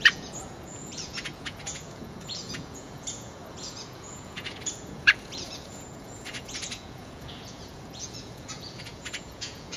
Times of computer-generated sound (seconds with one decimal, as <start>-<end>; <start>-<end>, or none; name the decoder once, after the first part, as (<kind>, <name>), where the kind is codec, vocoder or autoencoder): 0.0-9.8 (vocoder, Vocos)